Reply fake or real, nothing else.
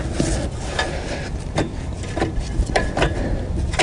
real